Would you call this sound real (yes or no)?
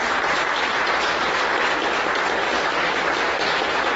no